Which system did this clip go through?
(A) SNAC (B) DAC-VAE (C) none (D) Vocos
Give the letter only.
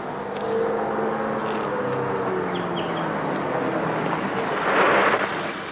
C